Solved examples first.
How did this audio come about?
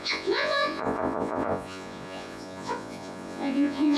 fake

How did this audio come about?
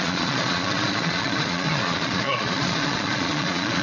fake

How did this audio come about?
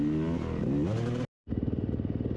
real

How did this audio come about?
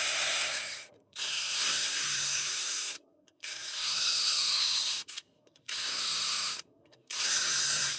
fake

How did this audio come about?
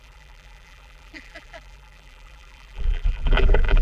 fake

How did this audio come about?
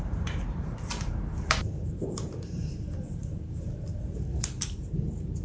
fake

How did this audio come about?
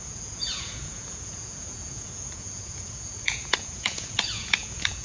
fake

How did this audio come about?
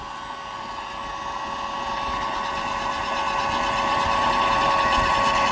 real